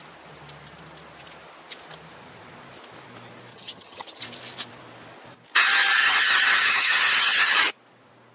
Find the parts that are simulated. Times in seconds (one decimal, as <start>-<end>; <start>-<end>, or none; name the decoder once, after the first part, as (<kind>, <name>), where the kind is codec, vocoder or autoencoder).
3.5-4.2 (vocoder, HiFi-GAN); 6.0-7.5